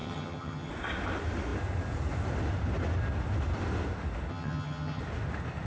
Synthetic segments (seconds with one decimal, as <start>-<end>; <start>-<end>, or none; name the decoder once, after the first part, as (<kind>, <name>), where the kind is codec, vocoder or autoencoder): 0.0-0.7 (vocoder, HiFi-GAN); 4.3-5.0